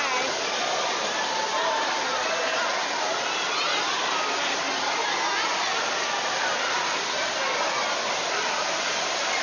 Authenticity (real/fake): real